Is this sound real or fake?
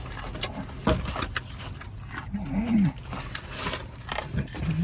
real